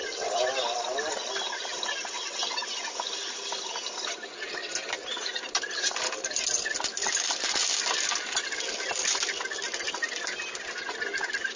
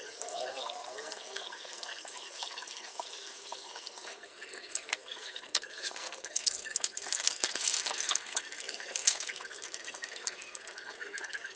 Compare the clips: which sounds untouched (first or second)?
first